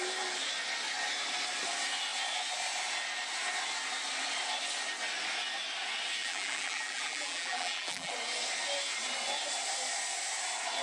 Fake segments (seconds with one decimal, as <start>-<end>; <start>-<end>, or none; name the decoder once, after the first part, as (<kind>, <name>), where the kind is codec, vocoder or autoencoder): 6.2-8.1 (vocoder, BigVGAN v2)